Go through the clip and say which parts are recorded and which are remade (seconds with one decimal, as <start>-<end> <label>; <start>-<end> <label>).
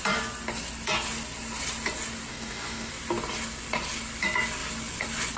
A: 0.0-2.3 recorded; 2.3-2.9 remade; 2.9-5.4 recorded